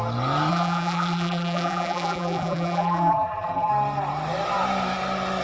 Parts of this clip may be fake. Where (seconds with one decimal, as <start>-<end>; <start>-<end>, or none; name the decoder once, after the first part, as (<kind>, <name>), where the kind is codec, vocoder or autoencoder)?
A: 0.5-3.7 (vocoder, BigVGAN v2)